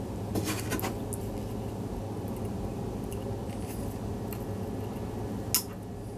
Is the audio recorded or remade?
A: recorded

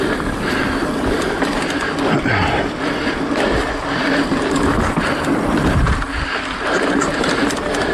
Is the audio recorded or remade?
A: remade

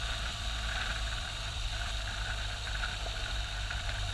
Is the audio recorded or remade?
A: remade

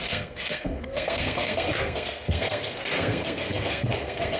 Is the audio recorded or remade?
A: remade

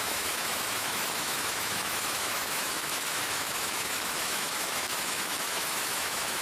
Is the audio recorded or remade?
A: remade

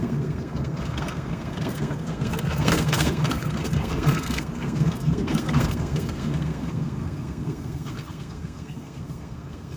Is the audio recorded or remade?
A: remade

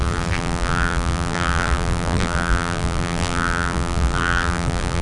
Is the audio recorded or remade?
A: remade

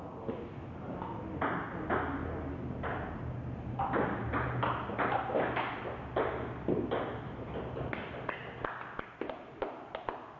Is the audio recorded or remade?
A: recorded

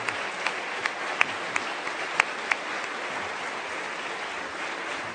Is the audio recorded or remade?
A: recorded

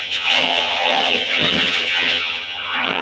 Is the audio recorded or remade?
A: remade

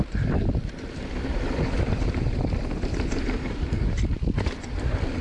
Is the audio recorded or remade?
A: remade